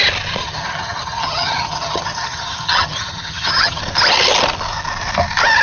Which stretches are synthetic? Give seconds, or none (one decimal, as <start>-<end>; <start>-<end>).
0.4-3.8